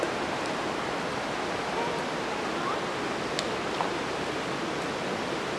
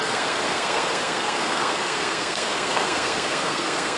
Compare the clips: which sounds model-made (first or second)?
second